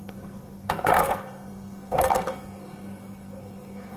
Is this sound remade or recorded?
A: remade